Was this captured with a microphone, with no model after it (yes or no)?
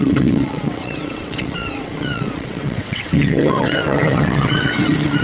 no